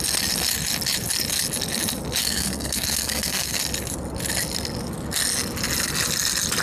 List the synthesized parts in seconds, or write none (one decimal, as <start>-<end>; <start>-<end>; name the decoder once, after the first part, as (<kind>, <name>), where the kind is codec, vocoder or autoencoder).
2.2-3.6 (codec, SNAC)